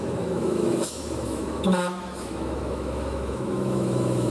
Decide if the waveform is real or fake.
fake